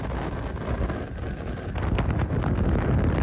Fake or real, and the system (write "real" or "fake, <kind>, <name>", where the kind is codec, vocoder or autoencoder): real